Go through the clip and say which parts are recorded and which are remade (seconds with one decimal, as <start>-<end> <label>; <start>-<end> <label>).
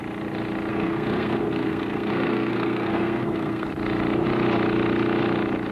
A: 0.0-0.7 recorded; 0.7-3.7 remade; 3.7-5.7 recorded